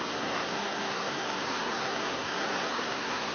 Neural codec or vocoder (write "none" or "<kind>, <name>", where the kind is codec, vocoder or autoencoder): codec, SNAC